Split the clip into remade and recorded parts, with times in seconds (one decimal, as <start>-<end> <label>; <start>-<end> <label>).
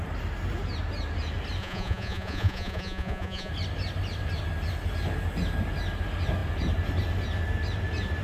0.0-1.6 recorded; 1.6-3.5 remade; 3.5-8.2 recorded